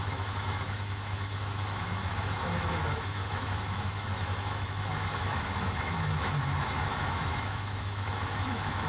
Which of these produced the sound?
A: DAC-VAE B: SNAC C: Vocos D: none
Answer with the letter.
A